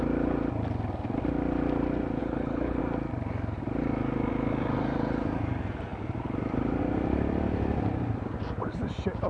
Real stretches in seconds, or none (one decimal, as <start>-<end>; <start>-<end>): 0.0-2.2; 2.8-9.3

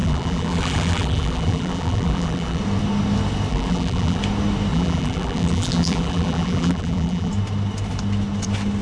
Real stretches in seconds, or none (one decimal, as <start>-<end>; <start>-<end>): 2.6-3.5; 4.2-4.7; 7.3-8.8

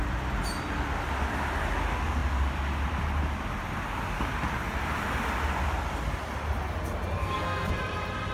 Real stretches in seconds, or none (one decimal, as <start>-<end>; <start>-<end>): 0.0-7.2; 7.7-8.3